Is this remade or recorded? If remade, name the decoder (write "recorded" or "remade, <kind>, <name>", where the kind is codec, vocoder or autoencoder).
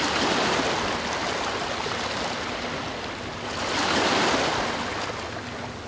recorded